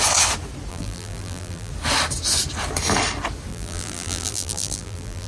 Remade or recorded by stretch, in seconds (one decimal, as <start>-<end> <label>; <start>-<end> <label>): 0.0-0.7 recorded; 0.7-1.7 remade; 1.7-3.5 recorded; 3.5-5.3 remade